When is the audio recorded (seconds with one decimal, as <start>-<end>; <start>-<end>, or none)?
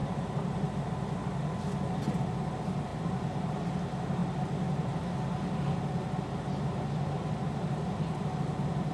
0.7-2.9; 3.7-8.9